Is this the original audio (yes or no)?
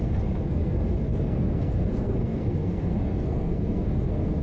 no